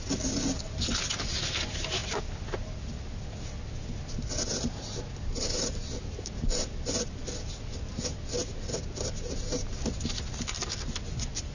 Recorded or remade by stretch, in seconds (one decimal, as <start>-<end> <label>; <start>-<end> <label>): 0.0-4.5 recorded; 4.5-7.2 remade; 7.2-8.4 recorded; 8.4-9.7 remade; 9.7-11.5 recorded